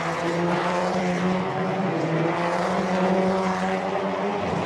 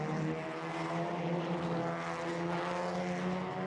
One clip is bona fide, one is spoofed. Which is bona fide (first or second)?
second